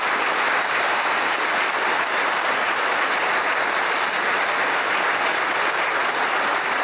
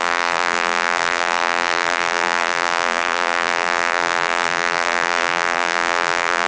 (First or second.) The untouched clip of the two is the first